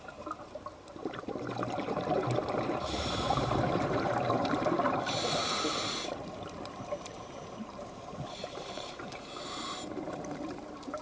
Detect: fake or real fake